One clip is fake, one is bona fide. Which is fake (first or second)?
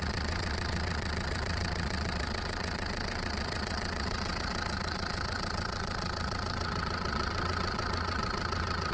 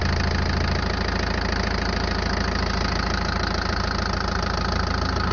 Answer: first